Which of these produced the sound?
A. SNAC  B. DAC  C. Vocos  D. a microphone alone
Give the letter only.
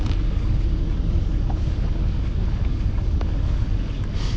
B